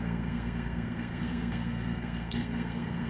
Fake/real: fake